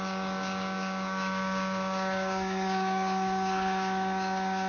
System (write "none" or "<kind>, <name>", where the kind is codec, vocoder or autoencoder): codec, DAC